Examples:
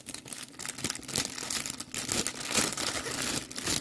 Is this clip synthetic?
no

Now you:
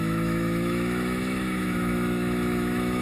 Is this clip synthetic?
yes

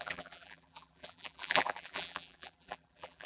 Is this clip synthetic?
yes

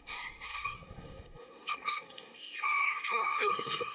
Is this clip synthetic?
yes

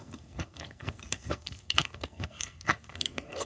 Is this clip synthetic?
yes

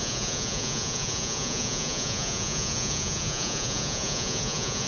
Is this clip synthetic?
yes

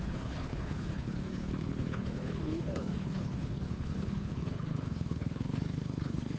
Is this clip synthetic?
yes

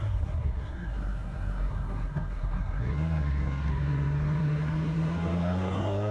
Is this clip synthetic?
yes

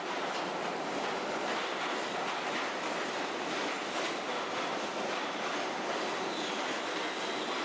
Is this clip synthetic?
no